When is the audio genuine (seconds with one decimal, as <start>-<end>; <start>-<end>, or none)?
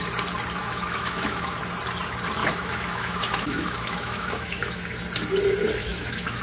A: 0.0-0.6; 1.6-2.4; 5.0-5.8